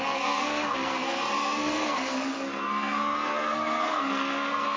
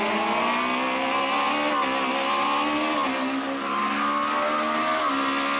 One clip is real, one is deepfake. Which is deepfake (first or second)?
first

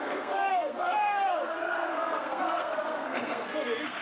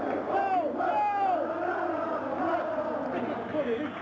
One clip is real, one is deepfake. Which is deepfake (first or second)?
first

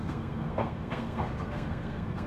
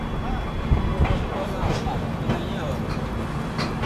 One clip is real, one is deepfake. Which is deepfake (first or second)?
first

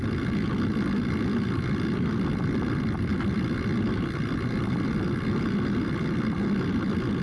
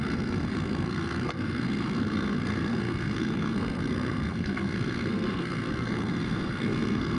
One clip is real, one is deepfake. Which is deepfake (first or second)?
second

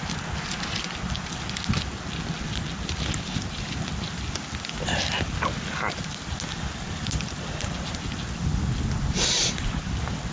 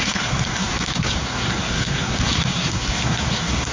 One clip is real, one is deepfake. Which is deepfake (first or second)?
second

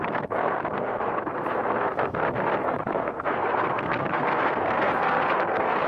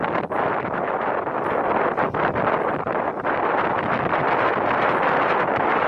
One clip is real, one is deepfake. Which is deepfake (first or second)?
first